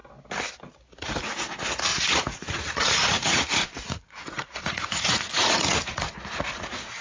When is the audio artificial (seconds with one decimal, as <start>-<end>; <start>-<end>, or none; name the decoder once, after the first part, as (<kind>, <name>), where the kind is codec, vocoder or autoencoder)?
1.9-6.1 (vocoder, Vocos)